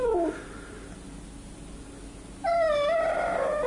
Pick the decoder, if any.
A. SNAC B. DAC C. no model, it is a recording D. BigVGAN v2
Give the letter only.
C